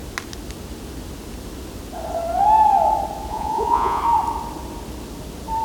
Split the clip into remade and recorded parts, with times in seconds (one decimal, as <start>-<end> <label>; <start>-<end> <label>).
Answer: 0.0-3.3 recorded; 3.3-4.0 remade; 4.0-5.6 recorded